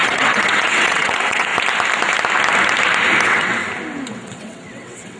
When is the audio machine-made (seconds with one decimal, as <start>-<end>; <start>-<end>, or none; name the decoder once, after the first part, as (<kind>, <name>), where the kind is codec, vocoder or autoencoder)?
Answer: 0.0-1.5 (vocoder, WaveNeXt); 3.2-3.6; 4.1-5.2